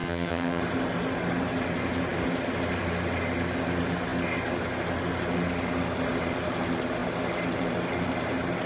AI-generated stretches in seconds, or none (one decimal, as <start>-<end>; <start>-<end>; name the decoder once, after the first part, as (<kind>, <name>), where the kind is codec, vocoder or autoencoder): 0.0-0.6 (vocoder, HiFi-GAN)